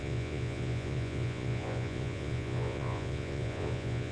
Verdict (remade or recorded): remade